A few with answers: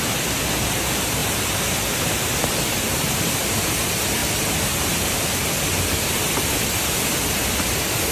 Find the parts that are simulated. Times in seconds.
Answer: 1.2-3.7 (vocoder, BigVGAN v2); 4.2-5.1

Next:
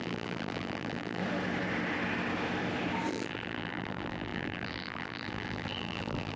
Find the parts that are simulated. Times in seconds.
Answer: 0.0-1.2 (vocoder, BigVGAN v2); 3.1-6.4

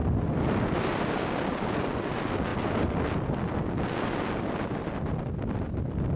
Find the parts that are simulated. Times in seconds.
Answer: 0.0-1.7 (vocoder, BigVGAN v2); 2.5-5.2

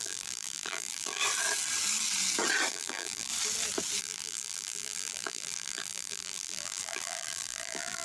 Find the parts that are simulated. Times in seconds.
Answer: 0.0-1.2 (vocoder, BigVGAN v2); 2.7-3.3; 4.0-8.0

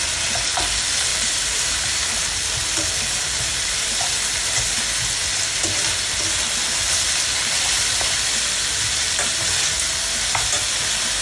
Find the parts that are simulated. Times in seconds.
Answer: 1.1-4.1 (vocoder, BigVGAN v2)